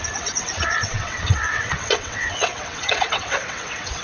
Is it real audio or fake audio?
fake